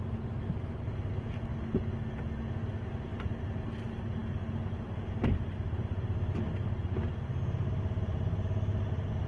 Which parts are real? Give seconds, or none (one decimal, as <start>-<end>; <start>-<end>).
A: 0.0-9.3